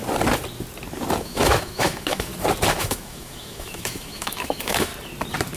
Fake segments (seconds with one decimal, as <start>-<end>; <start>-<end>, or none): 1.2-2.3; 2.8-4.9